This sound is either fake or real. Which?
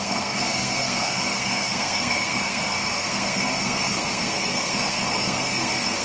fake